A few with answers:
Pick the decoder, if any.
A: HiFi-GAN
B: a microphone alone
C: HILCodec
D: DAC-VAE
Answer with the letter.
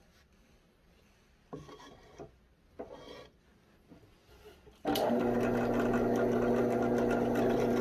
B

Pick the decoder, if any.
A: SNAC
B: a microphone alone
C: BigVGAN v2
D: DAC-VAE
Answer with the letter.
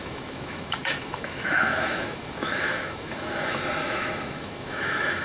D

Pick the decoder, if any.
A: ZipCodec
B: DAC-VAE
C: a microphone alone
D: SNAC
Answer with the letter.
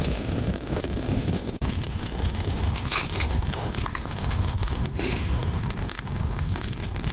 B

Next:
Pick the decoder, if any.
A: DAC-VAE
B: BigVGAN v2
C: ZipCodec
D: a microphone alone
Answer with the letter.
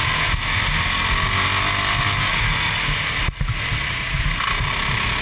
D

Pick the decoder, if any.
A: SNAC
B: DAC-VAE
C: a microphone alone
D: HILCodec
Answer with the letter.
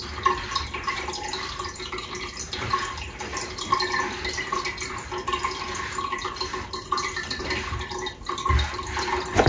C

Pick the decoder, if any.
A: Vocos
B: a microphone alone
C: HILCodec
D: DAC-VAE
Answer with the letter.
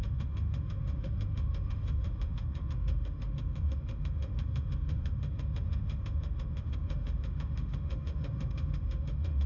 D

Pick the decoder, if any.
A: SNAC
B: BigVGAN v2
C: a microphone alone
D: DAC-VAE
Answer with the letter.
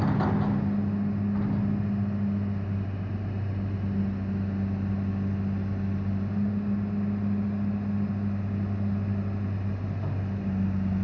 C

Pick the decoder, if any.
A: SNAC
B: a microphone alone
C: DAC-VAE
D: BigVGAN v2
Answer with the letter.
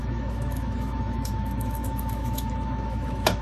C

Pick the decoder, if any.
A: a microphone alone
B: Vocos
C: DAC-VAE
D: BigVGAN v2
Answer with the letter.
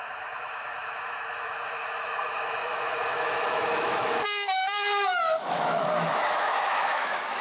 C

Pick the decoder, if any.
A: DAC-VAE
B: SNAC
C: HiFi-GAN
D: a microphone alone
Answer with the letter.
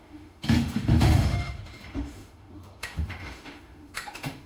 A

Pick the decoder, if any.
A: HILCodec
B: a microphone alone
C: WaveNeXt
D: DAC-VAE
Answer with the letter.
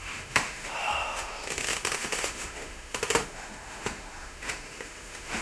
D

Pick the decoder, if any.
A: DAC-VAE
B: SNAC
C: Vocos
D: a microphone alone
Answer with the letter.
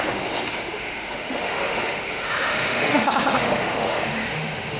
A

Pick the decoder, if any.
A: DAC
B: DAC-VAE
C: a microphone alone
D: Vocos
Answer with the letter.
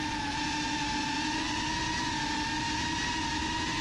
C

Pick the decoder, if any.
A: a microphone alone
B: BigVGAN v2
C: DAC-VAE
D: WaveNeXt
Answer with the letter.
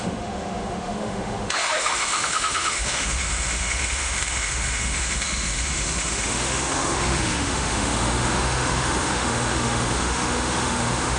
C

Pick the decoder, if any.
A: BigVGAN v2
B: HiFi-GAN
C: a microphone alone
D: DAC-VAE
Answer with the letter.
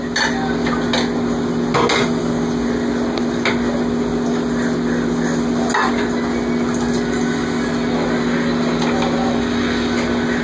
C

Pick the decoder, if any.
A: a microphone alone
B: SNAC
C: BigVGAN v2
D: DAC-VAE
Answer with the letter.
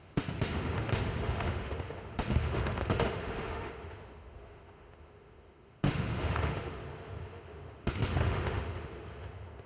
D